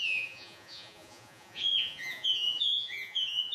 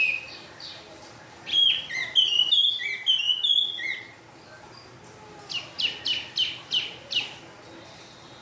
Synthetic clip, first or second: first